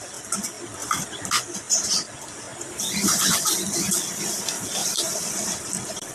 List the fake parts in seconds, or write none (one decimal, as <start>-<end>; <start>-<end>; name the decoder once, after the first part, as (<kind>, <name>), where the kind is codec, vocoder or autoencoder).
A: 0.8-1.3 (vocoder, BigVGAN v2); 2.5-3.2; 4.8-6.1